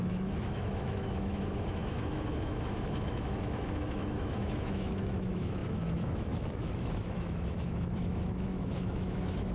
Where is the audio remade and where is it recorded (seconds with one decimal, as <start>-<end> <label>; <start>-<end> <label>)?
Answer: 0.0-9.5 remade